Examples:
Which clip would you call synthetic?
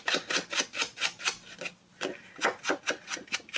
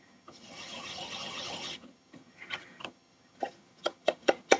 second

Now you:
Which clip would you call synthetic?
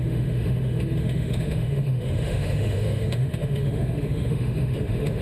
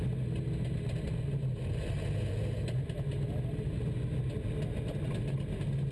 first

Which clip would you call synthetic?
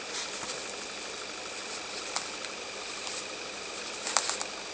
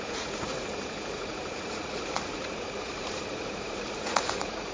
second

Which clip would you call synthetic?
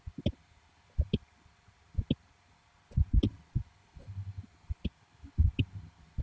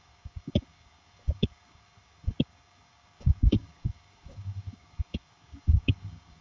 second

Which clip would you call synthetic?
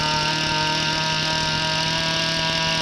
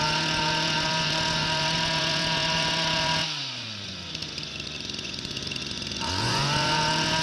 second